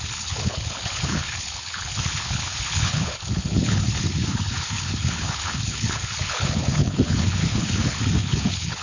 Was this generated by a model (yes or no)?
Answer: yes